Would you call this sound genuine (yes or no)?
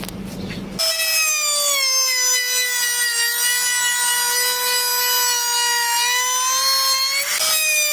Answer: yes